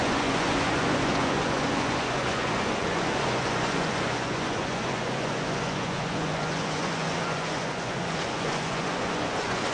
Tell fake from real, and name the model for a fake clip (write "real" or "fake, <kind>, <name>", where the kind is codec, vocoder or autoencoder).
fake, vocoder, Vocos